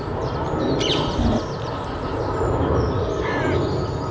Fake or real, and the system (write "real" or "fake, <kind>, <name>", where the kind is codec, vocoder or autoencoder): real